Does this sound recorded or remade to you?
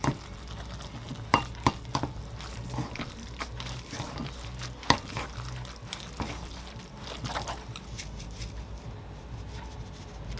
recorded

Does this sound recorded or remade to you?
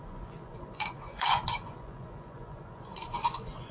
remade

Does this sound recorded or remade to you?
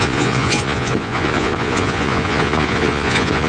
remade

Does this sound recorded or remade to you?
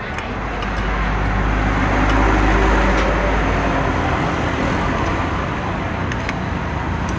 recorded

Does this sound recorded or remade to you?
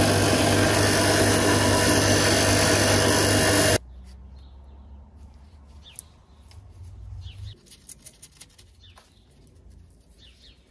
recorded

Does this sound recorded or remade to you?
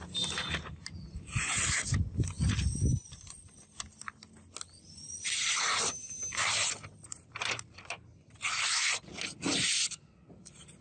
recorded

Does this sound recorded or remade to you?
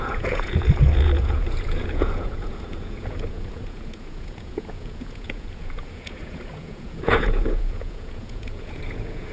remade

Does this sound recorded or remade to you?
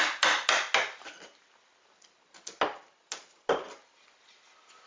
recorded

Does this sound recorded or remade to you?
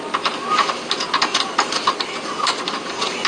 recorded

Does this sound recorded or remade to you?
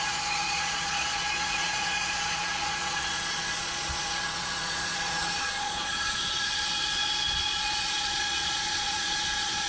remade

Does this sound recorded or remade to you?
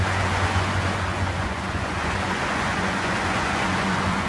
remade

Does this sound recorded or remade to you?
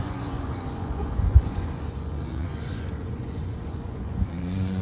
remade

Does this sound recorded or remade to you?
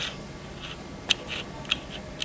recorded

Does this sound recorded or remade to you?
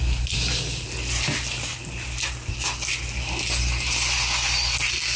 recorded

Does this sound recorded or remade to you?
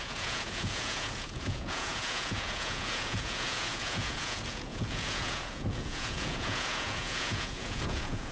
remade